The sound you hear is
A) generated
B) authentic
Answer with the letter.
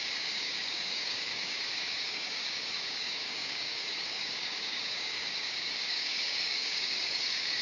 A